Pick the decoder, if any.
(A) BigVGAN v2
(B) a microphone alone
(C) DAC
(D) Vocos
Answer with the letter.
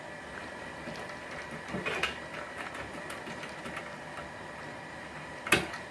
B